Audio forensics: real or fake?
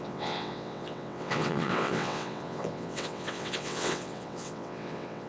fake